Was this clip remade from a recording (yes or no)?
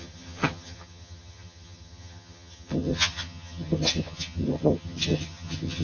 yes